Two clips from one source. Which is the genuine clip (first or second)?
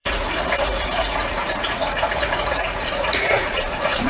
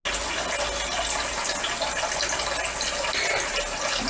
second